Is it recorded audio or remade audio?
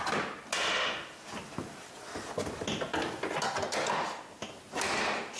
recorded